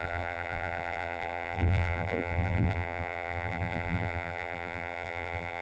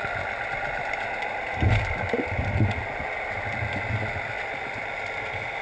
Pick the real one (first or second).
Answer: second